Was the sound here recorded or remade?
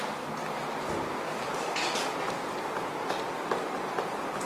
recorded